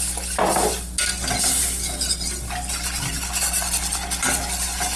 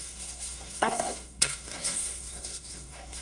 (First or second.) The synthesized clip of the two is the second